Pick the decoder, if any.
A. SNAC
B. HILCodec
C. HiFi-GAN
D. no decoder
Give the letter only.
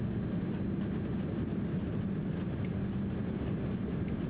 D